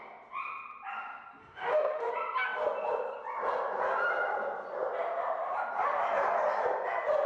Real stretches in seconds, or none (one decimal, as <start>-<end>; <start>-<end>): 0.0-1.4; 2.1-7.3